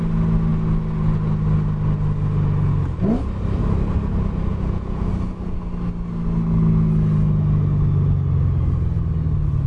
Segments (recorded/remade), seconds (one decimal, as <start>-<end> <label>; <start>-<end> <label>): 0.0-4.5 recorded; 4.5-5.1 remade; 5.1-9.7 recorded